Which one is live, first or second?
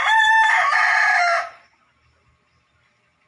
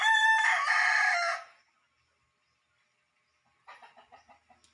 second